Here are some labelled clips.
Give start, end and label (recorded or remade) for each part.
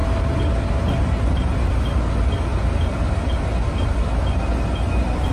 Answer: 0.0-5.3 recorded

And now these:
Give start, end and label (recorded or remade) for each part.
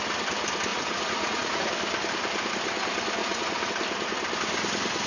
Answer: 0.0-0.7 recorded; 0.7-1.7 remade; 1.7-3.2 recorded; 3.2-3.7 remade; 3.7-5.1 recorded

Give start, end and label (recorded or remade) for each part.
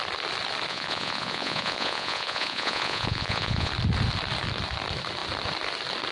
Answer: 0.0-0.7 recorded; 0.7-3.7 remade; 3.7-6.1 recorded